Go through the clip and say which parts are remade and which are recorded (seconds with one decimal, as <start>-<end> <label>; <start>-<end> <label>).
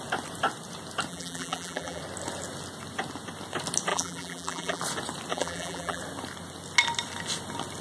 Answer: 0.0-1.1 recorded; 1.1-2.0 remade; 2.0-3.9 recorded; 3.9-4.8 remade; 4.8-5.3 recorded; 5.3-6.0 remade; 6.0-7.8 recorded